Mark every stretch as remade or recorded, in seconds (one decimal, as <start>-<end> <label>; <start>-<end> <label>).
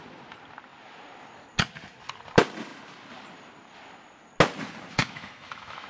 0.0-5.0 recorded; 5.0-5.9 remade